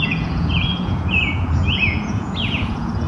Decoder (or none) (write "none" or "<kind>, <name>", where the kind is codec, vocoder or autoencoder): vocoder, Vocos